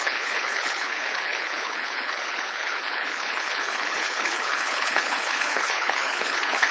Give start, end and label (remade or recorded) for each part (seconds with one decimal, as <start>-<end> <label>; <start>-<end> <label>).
0.0-6.7 remade